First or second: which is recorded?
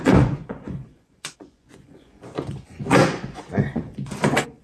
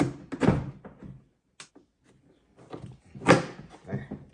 second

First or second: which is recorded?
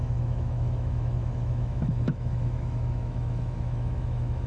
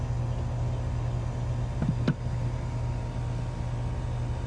second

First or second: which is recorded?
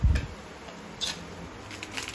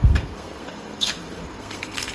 first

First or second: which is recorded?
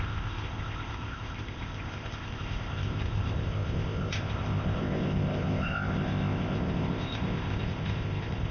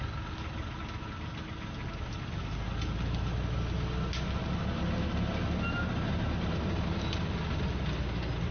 second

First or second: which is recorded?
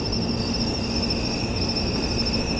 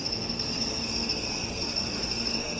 first